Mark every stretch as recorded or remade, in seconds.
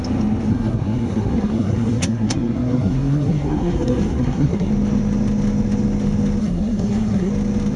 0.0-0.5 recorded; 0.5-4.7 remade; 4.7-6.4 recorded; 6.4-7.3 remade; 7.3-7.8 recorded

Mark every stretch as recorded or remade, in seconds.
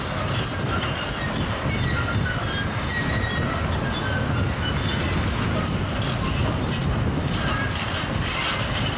0.0-9.0 recorded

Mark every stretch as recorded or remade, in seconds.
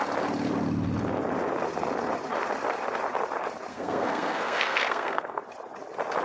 0.0-3.7 recorded; 3.7-5.4 remade; 5.4-6.2 recorded